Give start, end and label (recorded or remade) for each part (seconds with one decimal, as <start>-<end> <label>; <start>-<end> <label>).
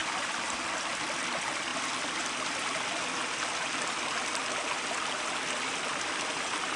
0.0-1.7 recorded; 1.7-2.7 remade; 2.7-6.8 recorded